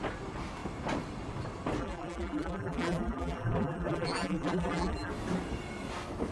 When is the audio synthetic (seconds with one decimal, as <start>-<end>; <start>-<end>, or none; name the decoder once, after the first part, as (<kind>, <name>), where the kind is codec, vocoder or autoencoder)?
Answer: 1.8-5.1 (vocoder, BigVGAN v2)